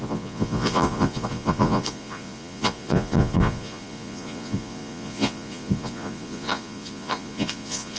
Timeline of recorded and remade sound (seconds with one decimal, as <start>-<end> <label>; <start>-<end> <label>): 0.0-8.0 remade